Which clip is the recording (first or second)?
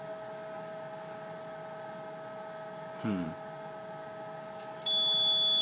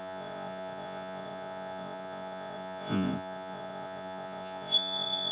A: first